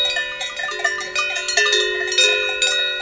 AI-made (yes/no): no